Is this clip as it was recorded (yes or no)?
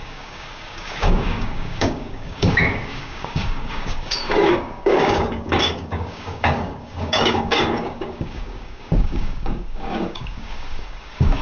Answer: no